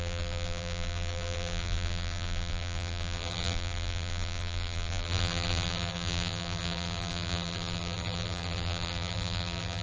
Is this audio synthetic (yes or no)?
yes